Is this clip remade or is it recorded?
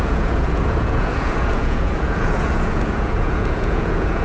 remade